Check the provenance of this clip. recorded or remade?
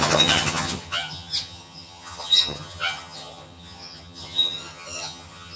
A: remade